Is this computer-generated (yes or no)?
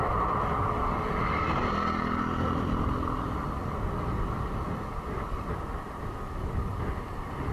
no